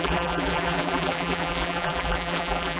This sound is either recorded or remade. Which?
remade